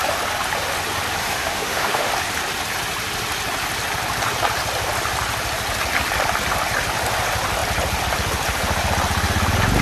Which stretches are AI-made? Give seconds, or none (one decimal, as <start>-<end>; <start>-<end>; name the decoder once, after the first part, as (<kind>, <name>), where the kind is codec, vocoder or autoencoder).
1.2-2.1 (autoencoder, DAC-VAE)